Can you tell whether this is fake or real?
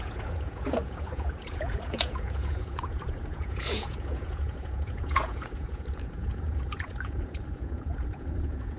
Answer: fake